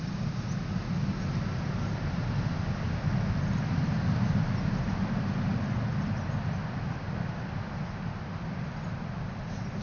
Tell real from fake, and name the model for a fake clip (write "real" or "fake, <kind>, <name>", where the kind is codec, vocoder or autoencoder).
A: real